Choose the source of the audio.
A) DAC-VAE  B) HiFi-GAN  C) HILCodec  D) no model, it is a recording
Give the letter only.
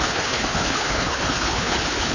C